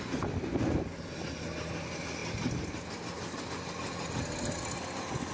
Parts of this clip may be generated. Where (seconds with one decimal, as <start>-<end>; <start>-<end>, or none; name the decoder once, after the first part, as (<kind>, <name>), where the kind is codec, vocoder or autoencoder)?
none